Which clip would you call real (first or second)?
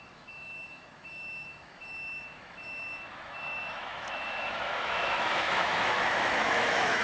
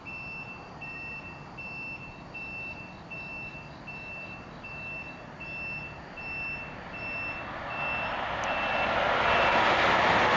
second